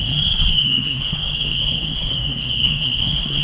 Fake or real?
fake